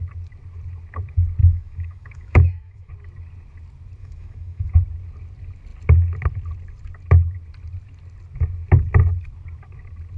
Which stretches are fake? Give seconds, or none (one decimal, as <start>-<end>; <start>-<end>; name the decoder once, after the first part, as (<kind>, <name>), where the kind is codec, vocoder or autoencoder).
1.4-2.9 (autoencoder, DAC-VAE); 4.0-4.7